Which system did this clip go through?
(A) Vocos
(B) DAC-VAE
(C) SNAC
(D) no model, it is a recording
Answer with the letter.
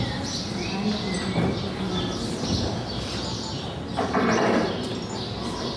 D